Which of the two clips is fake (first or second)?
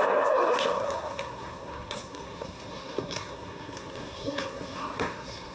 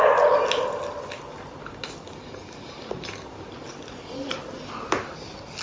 first